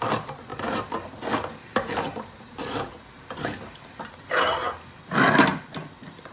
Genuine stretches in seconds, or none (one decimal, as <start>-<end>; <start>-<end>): 0.0-0.5; 1.2-1.7; 4.0-6.3